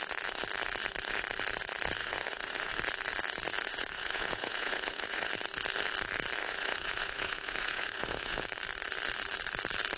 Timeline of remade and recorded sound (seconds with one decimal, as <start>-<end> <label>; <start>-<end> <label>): 0.0-2.0 recorded; 2.0-2.7 remade; 2.7-3.7 recorded; 3.7-5.3 remade; 5.3-6.4 recorded; 6.4-8.4 remade; 8.4-10.0 recorded